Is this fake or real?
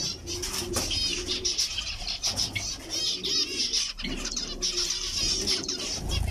real